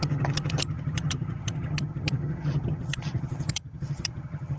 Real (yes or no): no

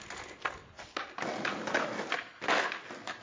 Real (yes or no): yes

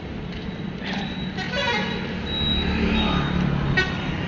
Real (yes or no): yes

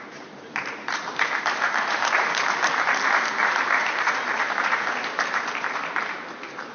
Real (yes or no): no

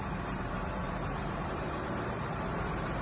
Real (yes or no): no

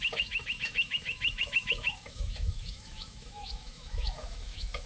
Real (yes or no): no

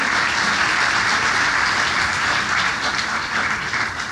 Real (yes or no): yes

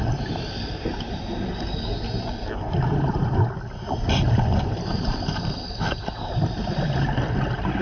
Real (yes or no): yes